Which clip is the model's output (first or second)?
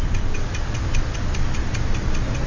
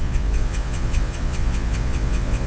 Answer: second